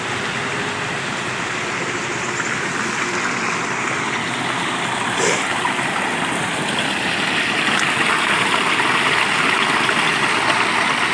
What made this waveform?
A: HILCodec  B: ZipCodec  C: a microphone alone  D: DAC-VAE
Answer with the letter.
C